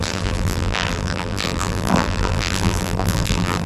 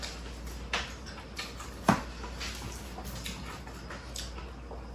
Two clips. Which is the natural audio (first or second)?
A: second